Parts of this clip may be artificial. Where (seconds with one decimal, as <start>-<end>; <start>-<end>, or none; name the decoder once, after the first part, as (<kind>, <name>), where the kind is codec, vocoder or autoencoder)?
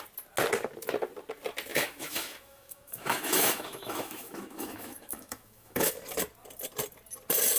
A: 1.7-5.9 (autoencoder, DAC-VAE)